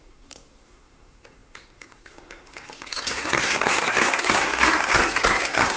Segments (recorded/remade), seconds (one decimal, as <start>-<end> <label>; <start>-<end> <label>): 0.0-5.8 remade